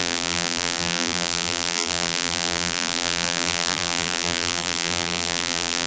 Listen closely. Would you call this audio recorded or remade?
remade